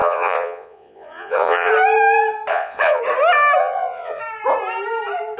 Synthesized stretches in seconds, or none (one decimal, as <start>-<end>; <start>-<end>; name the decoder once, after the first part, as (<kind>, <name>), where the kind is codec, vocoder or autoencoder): 0.0-1.7 (vocoder, Vocos); 2.5-3.0; 3.6-4.2